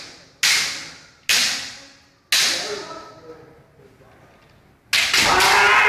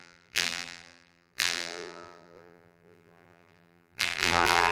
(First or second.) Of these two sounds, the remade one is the second